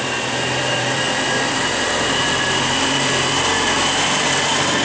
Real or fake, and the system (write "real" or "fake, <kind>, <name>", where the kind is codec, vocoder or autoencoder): fake, vocoder, BigVGAN v2